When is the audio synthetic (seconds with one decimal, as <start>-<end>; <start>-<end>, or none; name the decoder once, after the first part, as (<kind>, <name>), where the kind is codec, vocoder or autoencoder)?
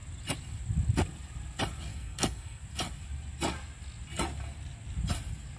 1.9-2.6 (codec, SNAC)